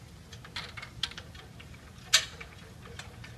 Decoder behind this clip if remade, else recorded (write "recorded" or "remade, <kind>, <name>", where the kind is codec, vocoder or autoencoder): recorded